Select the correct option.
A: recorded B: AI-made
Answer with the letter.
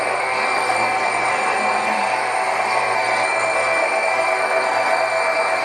B